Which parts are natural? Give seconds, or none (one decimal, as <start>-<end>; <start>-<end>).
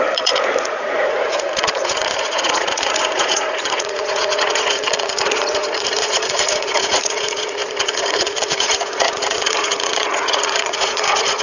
none